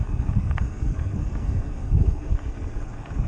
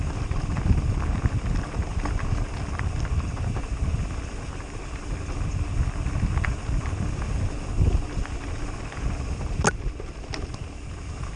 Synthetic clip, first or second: first